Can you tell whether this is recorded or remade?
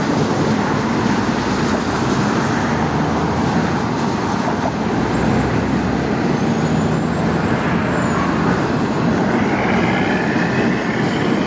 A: recorded